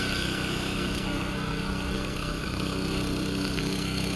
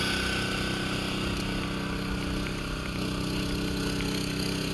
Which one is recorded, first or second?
second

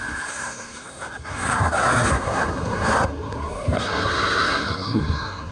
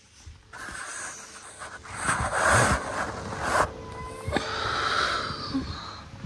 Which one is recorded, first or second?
second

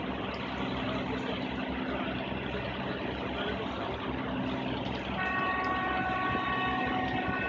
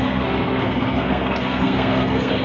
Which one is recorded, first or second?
first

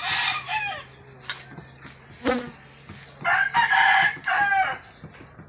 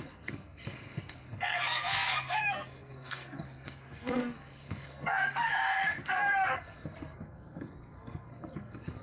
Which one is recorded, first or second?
first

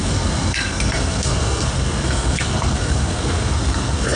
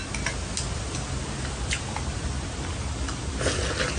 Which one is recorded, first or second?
second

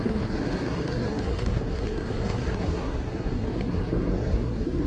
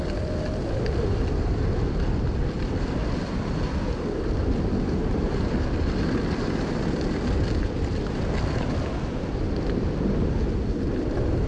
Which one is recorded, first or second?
second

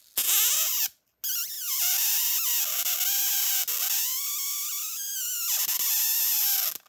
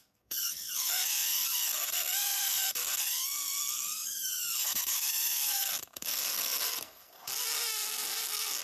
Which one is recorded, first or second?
first